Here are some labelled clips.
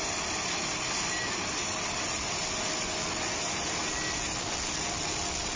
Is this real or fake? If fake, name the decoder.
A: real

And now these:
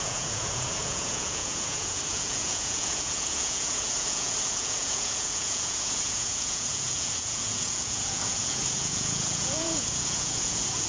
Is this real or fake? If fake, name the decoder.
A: fake, vocoder, Vocos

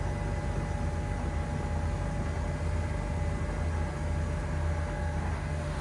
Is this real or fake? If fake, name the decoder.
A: real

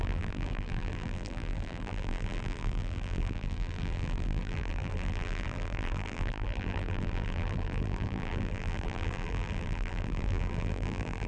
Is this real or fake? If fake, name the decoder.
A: fake, vocoder, BigVGAN v2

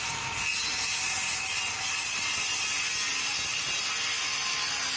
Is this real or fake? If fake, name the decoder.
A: real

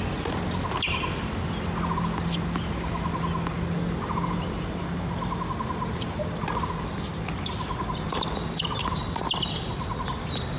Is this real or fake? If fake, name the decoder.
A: real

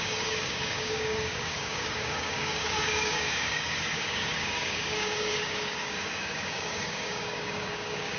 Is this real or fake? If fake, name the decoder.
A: fake, codec, DAC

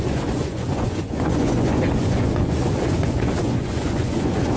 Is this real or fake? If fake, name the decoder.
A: fake, vocoder, Vocos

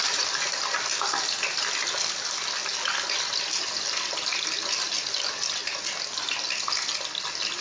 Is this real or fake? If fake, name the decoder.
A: real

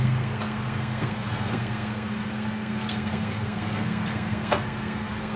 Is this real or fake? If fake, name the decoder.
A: fake, codec, SNAC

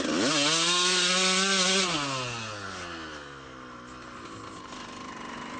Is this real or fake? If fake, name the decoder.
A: real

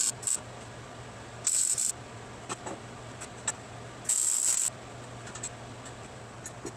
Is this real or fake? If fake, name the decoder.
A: real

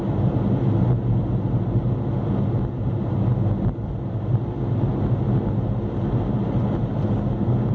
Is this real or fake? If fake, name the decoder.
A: real